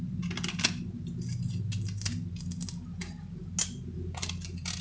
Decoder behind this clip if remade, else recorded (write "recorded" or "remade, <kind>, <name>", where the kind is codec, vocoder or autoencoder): recorded